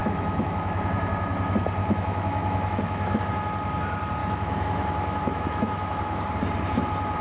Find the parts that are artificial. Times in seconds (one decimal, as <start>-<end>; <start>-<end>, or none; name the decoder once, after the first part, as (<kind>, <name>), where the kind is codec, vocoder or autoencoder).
0.0-0.9 (autoencoder, DAC-VAE); 1.8-3.3; 4.2-6.3